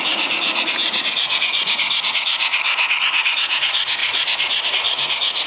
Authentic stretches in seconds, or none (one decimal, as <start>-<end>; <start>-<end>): 2.5-3.0